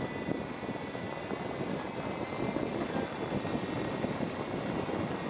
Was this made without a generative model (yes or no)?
yes